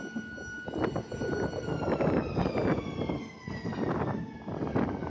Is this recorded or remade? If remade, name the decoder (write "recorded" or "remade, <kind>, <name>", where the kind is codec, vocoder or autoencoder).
recorded